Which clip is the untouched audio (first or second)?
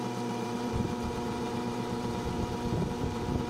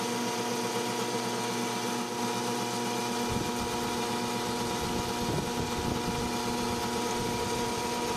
second